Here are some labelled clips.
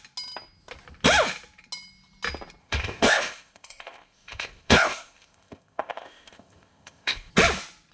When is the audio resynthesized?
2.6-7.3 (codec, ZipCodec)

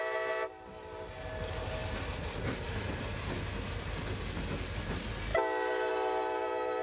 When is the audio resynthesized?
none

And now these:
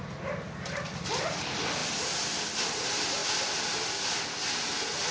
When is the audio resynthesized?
none

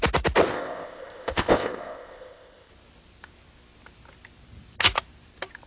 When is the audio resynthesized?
0.5-2.7 (codec, ZipCodec)

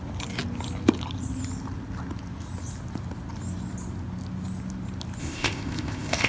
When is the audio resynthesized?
5.2-6.3 (codec, ZipCodec)

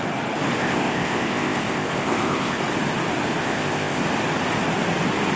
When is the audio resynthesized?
0.6-2.6 (codec, ZipCodec); 3.4-4.0

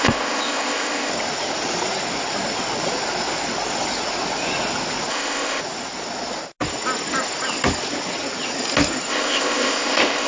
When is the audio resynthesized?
0.0-1.1 (codec, ZipCodec); 5.1-5.6; 9.1-10.3

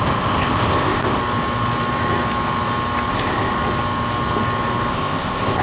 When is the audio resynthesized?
0.0-1.2 (codec, ZipCodec); 3.1-3.5; 4.9-5.6